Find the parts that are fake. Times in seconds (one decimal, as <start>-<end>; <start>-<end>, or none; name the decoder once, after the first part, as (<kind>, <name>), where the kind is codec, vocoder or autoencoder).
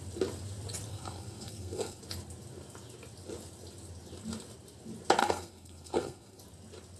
0.9-2.0 (codec, SNAC); 5.2-6.4